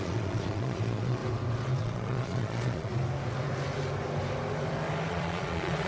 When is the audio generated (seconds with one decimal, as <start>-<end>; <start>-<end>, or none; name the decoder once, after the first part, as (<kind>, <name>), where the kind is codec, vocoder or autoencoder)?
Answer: 0.0-1.2 (vocoder, Vocos); 1.8-2.9; 5.1-5.9